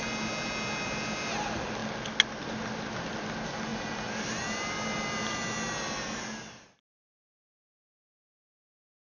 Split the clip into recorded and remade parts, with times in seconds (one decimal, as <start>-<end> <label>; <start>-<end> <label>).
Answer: 0.0-9.0 recorded